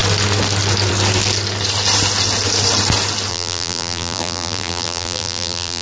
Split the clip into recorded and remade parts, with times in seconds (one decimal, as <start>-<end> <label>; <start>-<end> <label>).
0.0-3.3 recorded; 3.3-5.8 remade